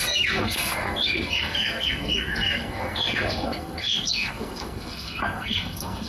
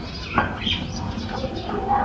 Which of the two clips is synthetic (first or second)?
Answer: first